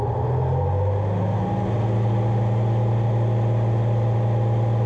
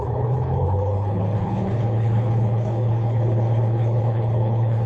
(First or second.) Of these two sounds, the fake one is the second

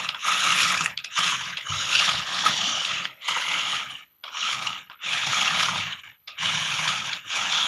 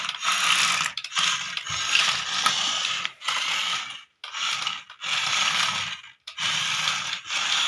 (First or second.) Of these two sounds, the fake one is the first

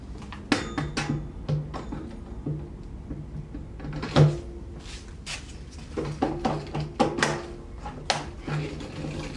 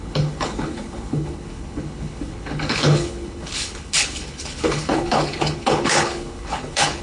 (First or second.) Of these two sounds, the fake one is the second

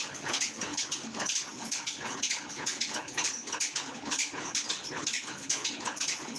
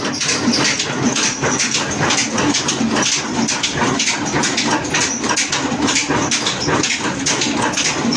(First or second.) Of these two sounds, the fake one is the first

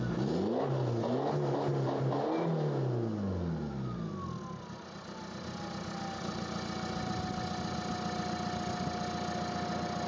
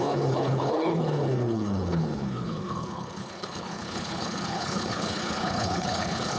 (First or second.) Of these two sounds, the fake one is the second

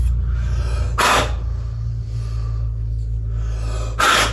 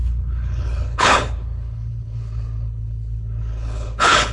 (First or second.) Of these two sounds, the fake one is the second